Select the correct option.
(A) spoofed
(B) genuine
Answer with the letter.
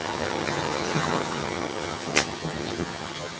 A